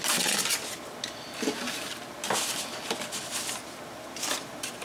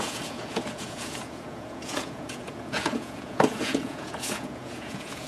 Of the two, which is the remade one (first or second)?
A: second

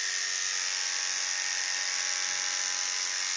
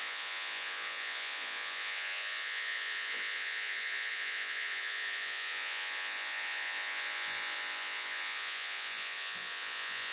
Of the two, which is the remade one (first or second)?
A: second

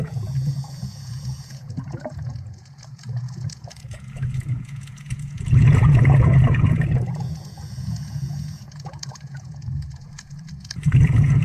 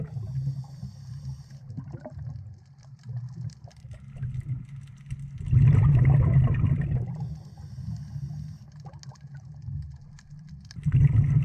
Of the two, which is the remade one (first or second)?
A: first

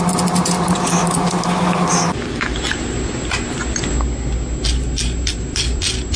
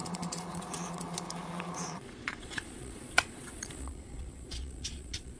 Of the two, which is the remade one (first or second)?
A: second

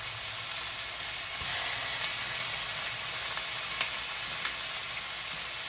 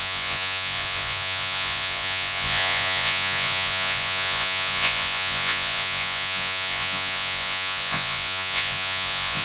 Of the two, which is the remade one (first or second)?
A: second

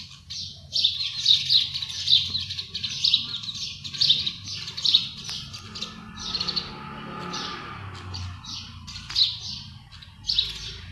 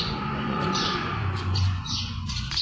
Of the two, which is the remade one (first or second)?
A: second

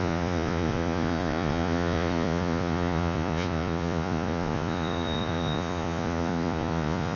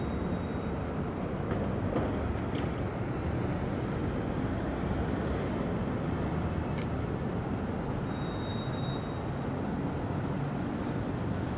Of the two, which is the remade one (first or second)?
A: first